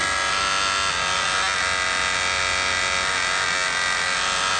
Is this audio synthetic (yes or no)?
no